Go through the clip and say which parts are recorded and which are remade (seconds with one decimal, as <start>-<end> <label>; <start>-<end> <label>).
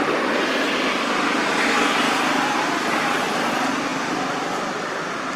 0.0-5.4 recorded